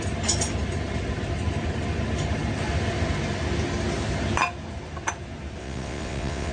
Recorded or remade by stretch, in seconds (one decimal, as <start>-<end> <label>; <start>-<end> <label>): 0.0-5.6 recorded; 5.6-6.5 remade